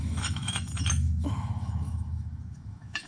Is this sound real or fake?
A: fake